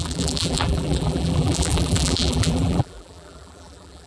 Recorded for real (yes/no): no